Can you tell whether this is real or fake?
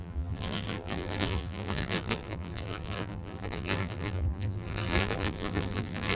fake